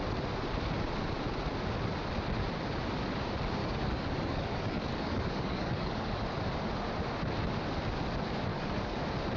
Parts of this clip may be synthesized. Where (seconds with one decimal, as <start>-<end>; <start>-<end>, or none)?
3.6-6.2; 8.5-9.0